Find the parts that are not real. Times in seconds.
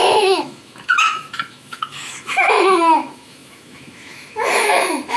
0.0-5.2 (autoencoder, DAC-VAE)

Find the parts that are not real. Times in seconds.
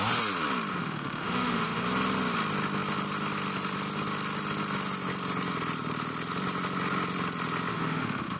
0.7-1.8 (autoencoder, DAC-VAE); 7.7-8.4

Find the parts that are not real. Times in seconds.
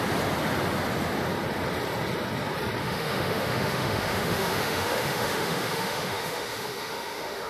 2.8-7.5 (autoencoder, DAC-VAE)